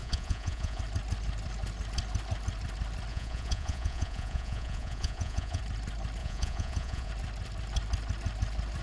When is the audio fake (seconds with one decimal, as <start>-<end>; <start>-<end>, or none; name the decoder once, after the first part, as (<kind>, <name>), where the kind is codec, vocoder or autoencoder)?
0.0-0.8 (vocoder, Vocos); 3.1-5.6; 6.2-7.1